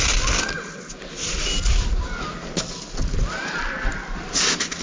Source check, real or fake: real